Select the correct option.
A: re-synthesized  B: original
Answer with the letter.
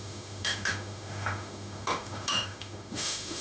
A